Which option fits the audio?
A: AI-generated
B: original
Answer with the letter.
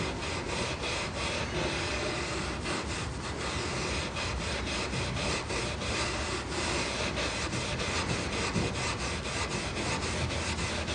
B